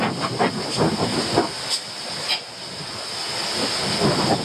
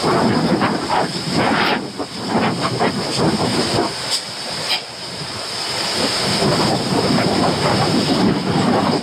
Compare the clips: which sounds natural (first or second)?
first